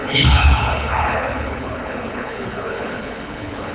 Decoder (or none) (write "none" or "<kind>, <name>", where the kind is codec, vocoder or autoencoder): codec, HILCodec